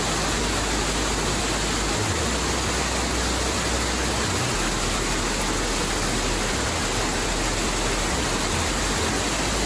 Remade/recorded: recorded